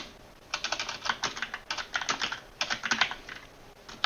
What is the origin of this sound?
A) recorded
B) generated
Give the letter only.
A